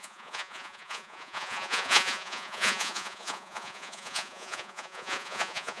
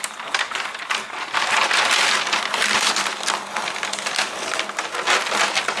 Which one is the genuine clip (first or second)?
second